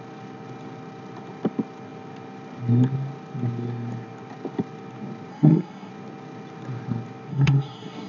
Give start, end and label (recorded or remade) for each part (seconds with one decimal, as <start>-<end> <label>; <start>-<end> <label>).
0.0-5.3 recorded; 5.3-5.9 remade; 5.9-7.3 recorded; 7.3-8.1 remade